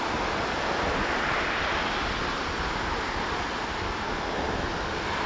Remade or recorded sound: recorded